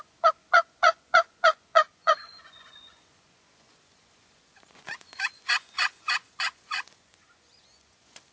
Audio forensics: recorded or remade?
remade